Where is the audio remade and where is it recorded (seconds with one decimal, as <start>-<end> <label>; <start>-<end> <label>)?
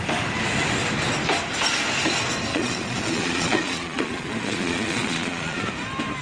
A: 0.0-2.5 recorded; 2.5-5.7 remade; 5.7-6.2 recorded